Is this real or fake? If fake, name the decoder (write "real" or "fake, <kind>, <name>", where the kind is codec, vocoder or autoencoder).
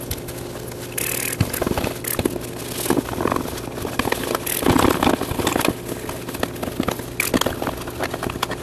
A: real